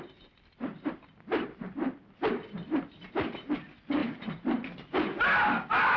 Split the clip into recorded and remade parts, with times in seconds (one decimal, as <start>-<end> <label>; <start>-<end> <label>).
0.0-6.0 recorded